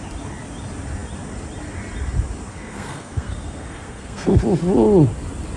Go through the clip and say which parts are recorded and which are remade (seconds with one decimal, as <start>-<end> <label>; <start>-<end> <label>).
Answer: 0.0-2.5 recorded; 2.5-4.4 remade; 4.4-5.6 recorded